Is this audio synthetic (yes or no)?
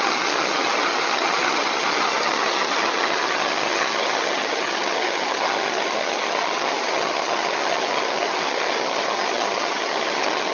yes